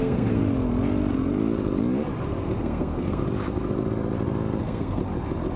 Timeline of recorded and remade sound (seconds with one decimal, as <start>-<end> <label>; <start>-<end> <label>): 0.0-0.4 remade; 0.4-2.6 recorded; 2.6-3.2 remade; 3.2-4.6 recorded; 4.6-5.0 remade; 5.0-5.6 recorded